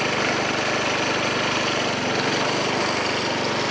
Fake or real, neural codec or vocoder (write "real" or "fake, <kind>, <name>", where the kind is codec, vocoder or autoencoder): real